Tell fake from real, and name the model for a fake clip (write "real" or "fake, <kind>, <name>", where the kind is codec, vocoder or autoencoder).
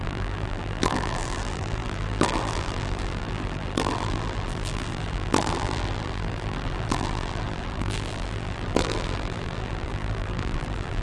fake, vocoder, BigVGAN v2